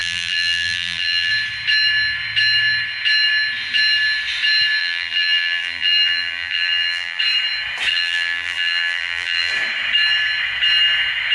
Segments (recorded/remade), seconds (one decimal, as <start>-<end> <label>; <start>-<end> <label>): 0.0-1.3 remade; 1.3-4.8 recorded; 4.8-7.2 remade; 7.2-7.9 recorded; 7.9-9.5 remade; 9.5-11.3 recorded